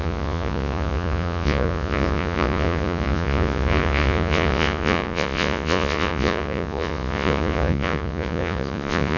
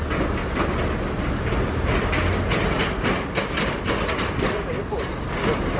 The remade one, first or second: first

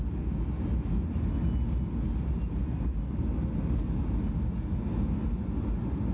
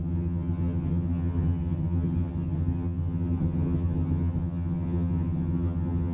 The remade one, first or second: second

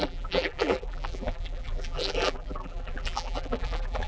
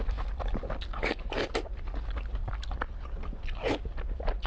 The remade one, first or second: first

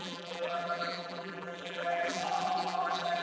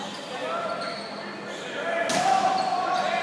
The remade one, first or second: first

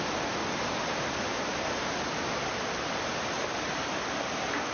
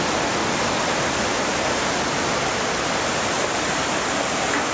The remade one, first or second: first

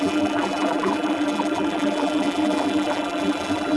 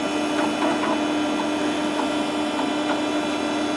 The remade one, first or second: first